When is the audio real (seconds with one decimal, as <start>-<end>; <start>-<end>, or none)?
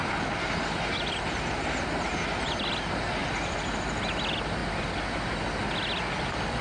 0.0-3.2; 3.8-6.6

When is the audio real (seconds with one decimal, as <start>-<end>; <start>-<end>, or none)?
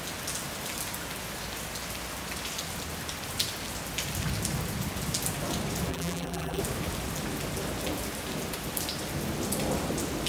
0.0-5.9; 6.6-10.3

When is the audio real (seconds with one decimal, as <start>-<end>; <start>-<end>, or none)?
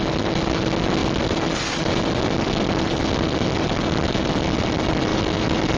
0.0-5.8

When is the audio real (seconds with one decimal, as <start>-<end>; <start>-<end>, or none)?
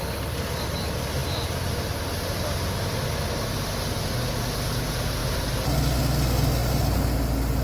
0.0-7.6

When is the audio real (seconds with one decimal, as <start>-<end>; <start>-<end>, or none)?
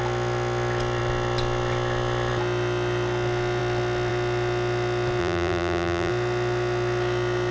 0.0-5.2; 6.1-7.5